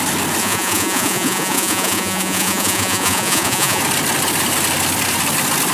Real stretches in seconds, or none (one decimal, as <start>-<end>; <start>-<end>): 0.0-0.4; 3.8-5.7